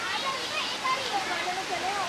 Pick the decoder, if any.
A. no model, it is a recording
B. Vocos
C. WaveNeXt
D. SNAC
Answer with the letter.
A